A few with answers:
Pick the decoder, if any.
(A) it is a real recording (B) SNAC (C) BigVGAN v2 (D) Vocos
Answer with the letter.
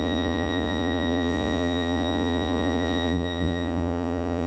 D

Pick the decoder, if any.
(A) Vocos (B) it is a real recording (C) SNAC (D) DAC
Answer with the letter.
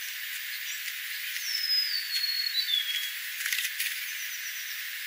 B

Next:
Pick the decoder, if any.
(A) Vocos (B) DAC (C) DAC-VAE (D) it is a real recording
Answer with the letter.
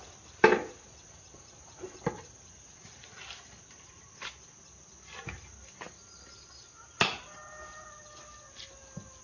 D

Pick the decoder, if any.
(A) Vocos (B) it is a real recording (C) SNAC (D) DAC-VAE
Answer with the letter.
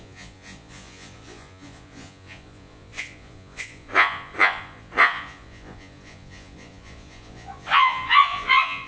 A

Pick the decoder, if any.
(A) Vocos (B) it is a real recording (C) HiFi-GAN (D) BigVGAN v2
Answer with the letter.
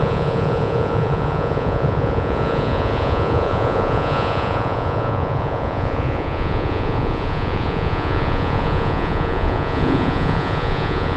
A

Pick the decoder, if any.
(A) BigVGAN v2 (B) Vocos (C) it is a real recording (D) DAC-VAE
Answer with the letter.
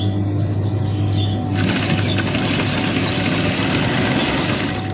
C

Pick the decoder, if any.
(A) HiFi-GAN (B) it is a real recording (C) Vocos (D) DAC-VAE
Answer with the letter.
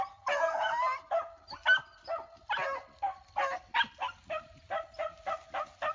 B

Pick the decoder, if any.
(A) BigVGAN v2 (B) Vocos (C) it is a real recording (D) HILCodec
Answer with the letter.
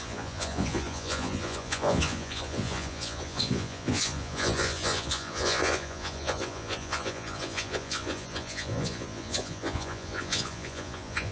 B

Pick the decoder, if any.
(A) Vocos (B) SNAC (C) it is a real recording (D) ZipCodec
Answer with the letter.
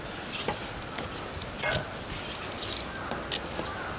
C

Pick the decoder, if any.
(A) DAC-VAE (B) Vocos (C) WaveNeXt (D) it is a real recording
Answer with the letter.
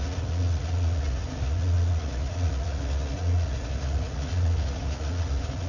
B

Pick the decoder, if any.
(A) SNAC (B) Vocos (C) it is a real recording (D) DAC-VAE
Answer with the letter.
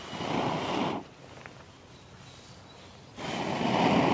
C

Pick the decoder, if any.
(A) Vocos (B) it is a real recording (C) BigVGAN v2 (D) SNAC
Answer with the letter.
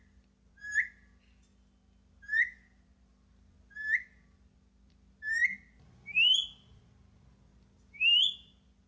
B